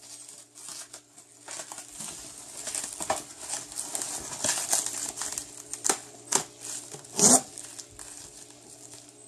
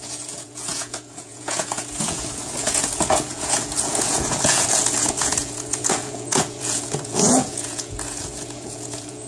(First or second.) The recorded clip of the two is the first